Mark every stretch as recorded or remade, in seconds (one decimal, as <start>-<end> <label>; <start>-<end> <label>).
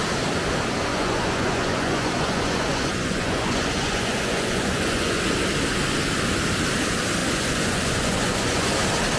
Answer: 0.0-0.9 recorded; 0.9-5.2 remade; 5.2-7.2 recorded; 7.2-8.7 remade; 8.7-9.2 recorded